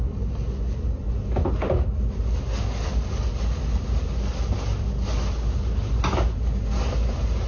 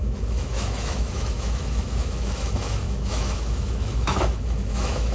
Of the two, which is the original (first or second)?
first